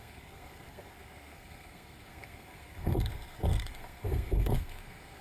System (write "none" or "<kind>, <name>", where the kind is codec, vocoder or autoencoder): codec, SNAC